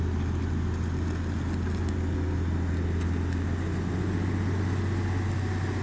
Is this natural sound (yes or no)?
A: yes